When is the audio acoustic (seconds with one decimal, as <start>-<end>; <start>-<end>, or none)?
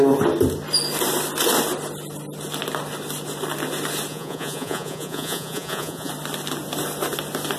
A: 0.0-4.1; 6.1-7.6